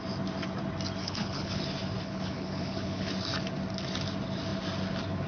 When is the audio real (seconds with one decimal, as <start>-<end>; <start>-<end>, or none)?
0.0-1.0; 1.6-2.0; 3.1-5.3